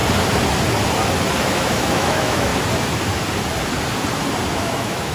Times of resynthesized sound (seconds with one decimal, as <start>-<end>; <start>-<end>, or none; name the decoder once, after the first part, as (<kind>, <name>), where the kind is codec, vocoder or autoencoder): 1.4-2.5 (autoencoder, DAC-VAE); 4.5-5.1